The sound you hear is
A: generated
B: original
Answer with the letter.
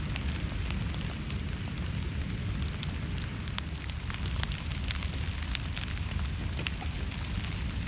B